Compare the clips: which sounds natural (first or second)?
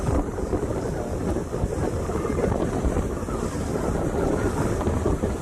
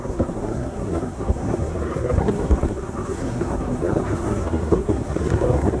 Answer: first